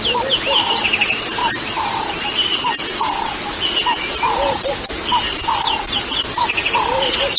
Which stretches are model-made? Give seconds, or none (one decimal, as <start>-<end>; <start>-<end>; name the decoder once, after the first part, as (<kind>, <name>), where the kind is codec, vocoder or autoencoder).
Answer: none